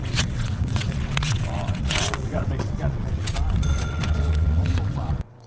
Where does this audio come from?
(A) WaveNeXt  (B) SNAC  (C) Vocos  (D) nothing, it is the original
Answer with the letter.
A